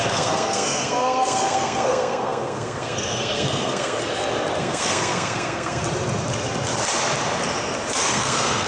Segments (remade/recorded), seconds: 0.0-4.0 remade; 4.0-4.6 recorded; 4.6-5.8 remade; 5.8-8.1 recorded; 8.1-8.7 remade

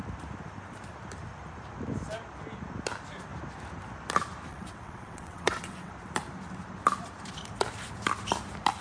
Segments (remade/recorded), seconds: 0.0-4.5 recorded; 4.5-5.9 remade; 5.9-8.8 recorded

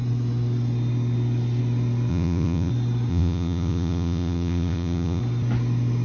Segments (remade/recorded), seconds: 0.0-2.1 recorded; 2.1-2.7 remade; 2.7-3.1 recorded; 3.1-5.2 remade; 5.2-6.0 recorded

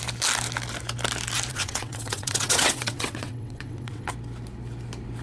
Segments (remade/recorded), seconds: 0.0-1.5 recorded; 1.5-4.1 remade; 4.1-5.2 recorded

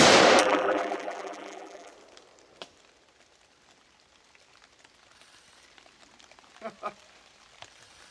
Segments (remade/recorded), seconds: 0.0-0.4 recorded; 0.4-1.9 remade; 1.9-8.1 recorded

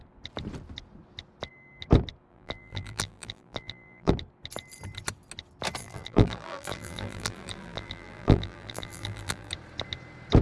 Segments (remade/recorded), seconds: 0.0-2.3 recorded; 2.3-4.1 remade; 4.1-5.8 recorded; 5.8-9.5 remade; 9.5-10.4 recorded

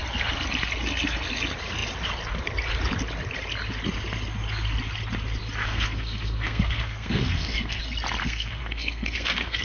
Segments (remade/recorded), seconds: 0.0-5.6 recorded; 5.6-7.8 remade; 7.8-8.2 recorded; 8.2-9.6 remade

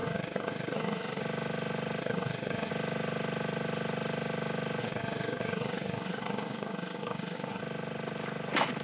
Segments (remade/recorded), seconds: 0.0-1.2 remade; 1.2-2.0 recorded; 2.0-2.7 remade; 2.7-4.8 recorded; 4.8-7.6 remade; 7.6-8.8 recorded